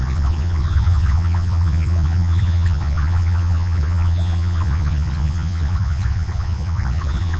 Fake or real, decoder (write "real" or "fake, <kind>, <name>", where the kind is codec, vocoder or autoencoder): fake, vocoder, Vocos